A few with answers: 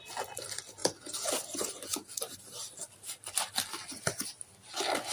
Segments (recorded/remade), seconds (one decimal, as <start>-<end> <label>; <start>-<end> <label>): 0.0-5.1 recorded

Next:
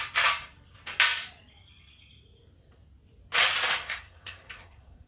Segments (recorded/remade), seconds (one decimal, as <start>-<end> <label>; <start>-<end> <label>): 0.0-3.8 recorded; 3.8-5.1 remade

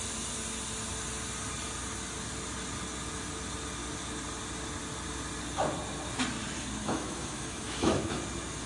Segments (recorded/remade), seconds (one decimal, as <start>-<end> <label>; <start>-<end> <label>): 0.0-6.8 recorded; 6.8-8.2 remade; 8.2-8.7 recorded